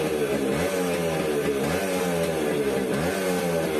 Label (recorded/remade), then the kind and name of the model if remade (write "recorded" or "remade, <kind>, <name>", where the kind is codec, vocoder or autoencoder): recorded